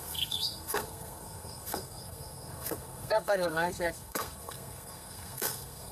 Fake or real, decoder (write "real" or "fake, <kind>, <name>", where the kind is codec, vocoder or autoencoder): fake, codec, SNAC